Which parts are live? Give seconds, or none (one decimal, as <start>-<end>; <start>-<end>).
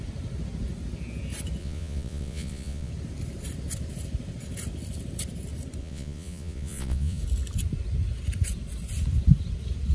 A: 0.0-1.6; 2.9-5.8; 7.2-9.9